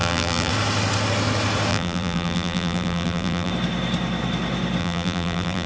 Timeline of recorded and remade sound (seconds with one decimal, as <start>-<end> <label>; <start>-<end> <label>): 0.0-0.5 remade; 0.5-1.7 recorded; 1.7-3.5 remade; 3.5-4.8 recorded; 4.8-5.7 remade